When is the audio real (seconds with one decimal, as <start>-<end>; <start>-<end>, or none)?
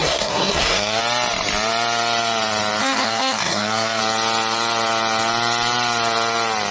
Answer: 1.0-2.8; 4.0-6.7